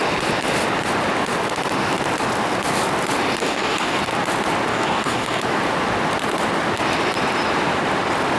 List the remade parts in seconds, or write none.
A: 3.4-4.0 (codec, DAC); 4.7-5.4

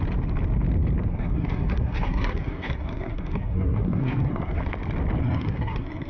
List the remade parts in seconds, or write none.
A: 1.1-4.6 (codec, SNAC); 5.2-6.1

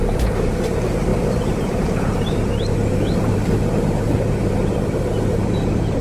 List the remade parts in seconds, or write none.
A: 0.0-4.6 (vocoder, BigVGAN v2); 5.3-6.0

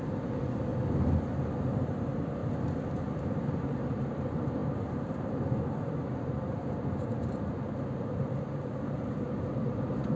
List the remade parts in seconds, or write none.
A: 0.0-0.7 (vocoder, BigVGAN v2); 1.8-2.4; 2.9-10.2

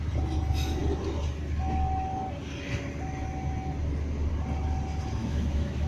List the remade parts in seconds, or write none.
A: 5.2-5.9 (autoencoder, DAC-VAE)

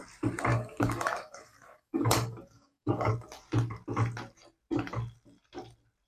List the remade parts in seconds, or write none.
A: 0.5-3.1 (codec, DAC)

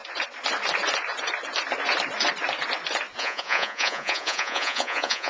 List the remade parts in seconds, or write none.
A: 3.2-5.3 (vocoder, Vocos)

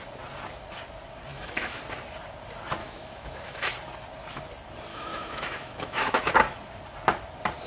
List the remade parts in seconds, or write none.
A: 1.3-1.8 (autoencoder, DAC-VAE); 2.8-3.7; 4.9-6.3